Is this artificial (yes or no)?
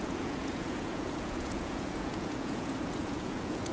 yes